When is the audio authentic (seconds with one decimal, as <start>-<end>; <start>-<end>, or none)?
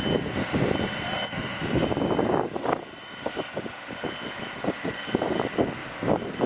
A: 0.0-5.8